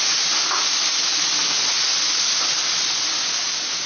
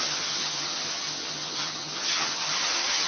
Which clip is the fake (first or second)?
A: second